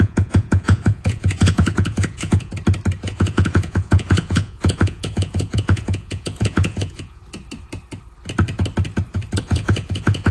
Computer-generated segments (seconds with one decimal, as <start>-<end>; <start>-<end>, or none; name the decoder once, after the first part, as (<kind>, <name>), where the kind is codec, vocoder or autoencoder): 0.0-2.5 (vocoder, Vocos); 3.0-7.2; 9.4-10.3